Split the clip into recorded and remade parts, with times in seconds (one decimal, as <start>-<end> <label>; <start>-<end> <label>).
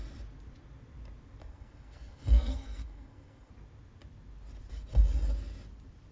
0.0-1.4 recorded; 1.4-3.5 remade; 3.5-6.1 recorded